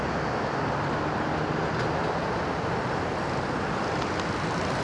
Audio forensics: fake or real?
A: real